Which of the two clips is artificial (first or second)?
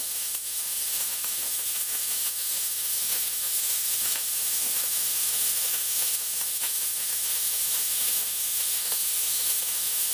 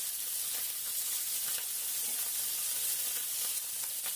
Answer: first